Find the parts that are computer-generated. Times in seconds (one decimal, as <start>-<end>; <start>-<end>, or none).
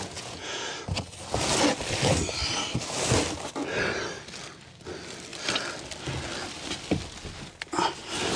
0.0-0.7